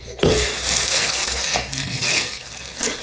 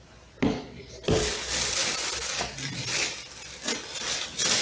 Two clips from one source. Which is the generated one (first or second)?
first